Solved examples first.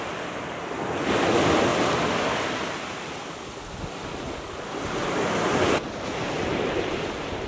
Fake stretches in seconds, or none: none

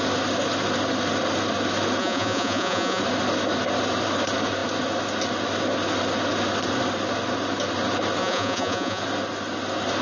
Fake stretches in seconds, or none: 2.0-3.0 (vocoder, Vocos); 8.2-9.0

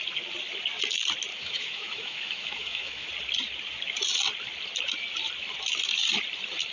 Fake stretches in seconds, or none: 1.3-3.1 (autoencoder, DAC-VAE)

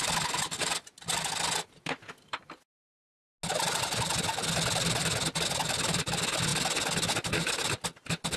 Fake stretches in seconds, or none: none